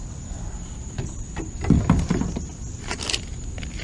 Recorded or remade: recorded